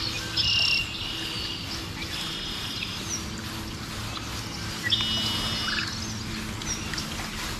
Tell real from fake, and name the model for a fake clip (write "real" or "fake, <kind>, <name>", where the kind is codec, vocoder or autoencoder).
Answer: real